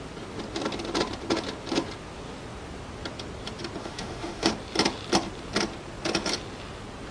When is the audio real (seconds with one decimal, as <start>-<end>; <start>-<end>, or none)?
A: 0.0-3.8; 4.5-7.1